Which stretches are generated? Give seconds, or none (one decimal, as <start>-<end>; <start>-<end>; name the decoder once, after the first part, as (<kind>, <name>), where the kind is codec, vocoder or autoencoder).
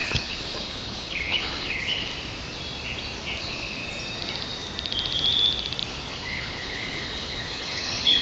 0.0-2.1 (codec, HILCodec); 3.4-3.8; 5.9-8.2